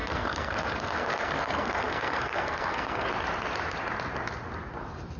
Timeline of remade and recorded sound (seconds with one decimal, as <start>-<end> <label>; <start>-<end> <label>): 0.0-3.1 remade; 3.1-5.2 recorded